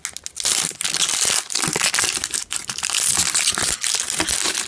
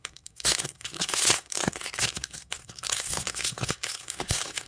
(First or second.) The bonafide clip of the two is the first